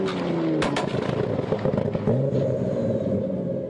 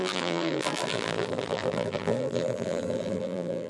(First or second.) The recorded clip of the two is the first